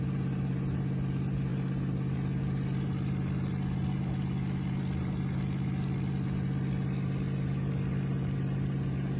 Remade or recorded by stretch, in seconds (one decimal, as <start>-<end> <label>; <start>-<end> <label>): 0.0-9.2 recorded